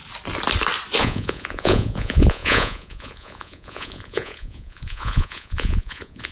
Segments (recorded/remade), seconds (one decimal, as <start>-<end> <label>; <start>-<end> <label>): 0.0-1.0 recorded; 1.0-6.3 remade